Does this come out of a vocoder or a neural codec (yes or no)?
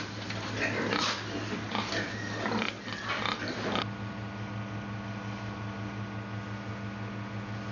no